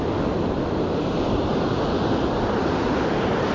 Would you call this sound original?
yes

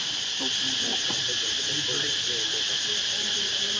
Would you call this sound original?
yes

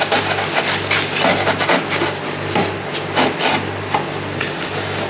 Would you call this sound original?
yes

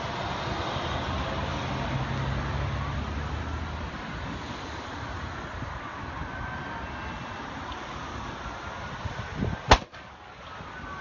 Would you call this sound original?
yes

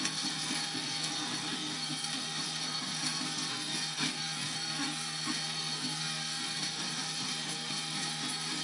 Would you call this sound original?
no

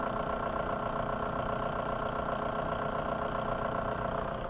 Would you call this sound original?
yes